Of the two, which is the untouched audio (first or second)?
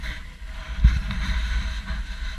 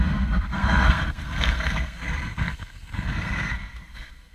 first